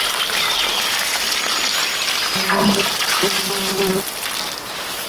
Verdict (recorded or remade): recorded